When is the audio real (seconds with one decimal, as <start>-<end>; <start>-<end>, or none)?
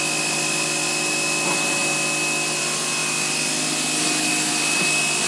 0.0-5.3